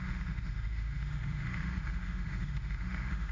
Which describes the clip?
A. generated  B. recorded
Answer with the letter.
A